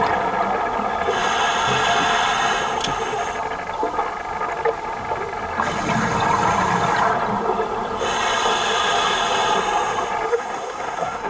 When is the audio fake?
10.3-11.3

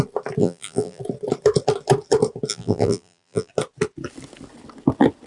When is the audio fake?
0.4-1.0; 2.5-3.5

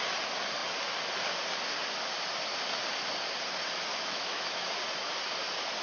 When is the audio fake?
3.9-4.7

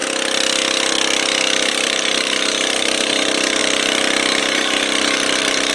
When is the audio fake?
1.7-3.6; 4.4-5.7

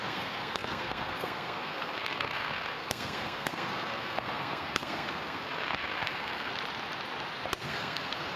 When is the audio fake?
0.0-6.5; 7.6-8.4

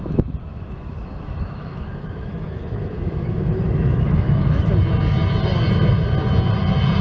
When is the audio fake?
0.5-4.7

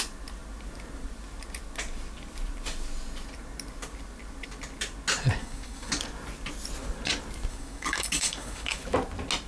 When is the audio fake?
5.4-5.9; 7.5-8.8

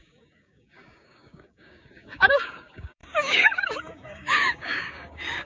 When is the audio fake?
0.0-5.5